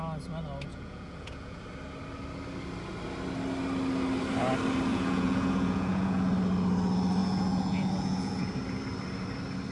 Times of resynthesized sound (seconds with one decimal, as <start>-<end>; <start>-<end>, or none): 0.7-1.6; 4.9-6.3; 7.2-8.4